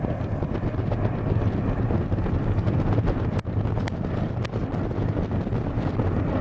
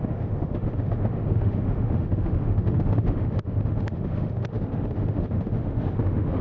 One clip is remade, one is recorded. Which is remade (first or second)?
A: second